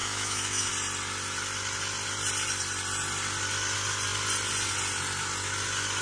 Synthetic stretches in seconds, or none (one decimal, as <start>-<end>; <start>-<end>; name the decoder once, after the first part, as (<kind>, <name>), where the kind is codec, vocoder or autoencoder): 0.0-0.7 (autoencoder, DAC-VAE)